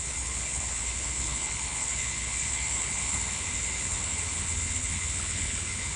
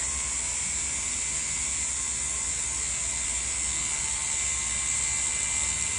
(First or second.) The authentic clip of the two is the second